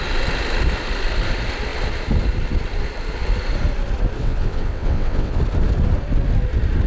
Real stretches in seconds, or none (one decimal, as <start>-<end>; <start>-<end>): 0.0-4.2; 5.4-6.9